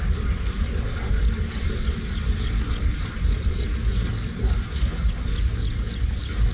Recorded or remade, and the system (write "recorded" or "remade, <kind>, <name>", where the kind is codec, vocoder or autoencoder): recorded